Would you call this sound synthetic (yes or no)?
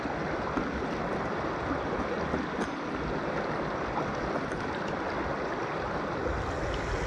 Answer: no